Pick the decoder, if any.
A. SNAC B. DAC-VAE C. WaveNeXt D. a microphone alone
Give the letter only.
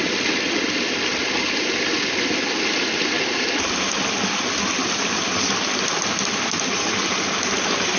D